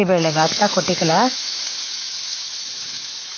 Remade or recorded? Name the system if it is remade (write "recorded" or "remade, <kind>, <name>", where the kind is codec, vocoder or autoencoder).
remade, autoencoder, DAC-VAE